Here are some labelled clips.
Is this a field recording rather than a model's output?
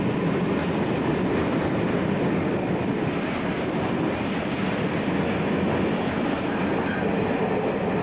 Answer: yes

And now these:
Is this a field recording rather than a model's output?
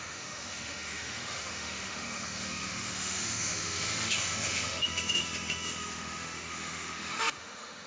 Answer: no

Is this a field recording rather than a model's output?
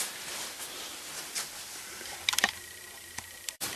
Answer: no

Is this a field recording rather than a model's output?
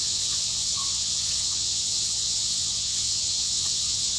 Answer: no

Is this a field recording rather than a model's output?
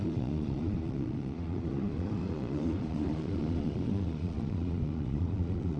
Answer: no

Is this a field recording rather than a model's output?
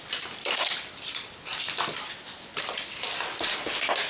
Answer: no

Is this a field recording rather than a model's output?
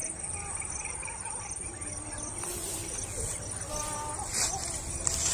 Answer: yes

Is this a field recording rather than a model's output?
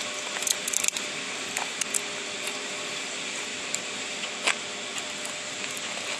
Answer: yes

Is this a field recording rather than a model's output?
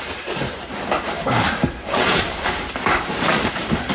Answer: no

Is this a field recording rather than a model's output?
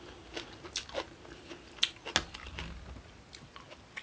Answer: yes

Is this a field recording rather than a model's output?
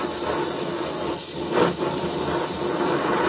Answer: yes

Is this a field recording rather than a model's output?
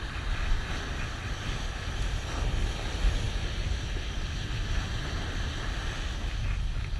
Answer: yes